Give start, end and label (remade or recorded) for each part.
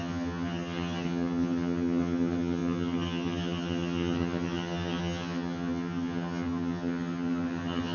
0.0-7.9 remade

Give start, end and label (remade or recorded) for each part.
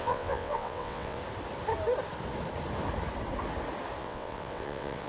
0.0-1.2 remade; 1.2-4.0 recorded; 4.0-5.1 remade